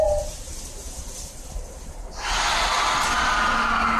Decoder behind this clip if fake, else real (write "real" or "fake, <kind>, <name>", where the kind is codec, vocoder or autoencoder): real